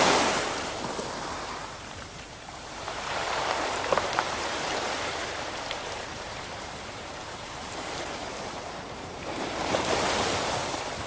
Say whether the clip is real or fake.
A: fake